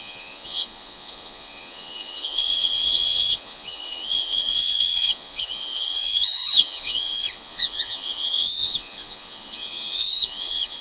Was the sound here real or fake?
fake